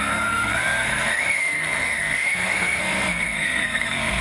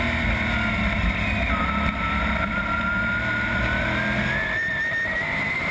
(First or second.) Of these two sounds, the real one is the second